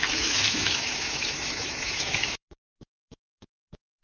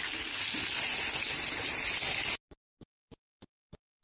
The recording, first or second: second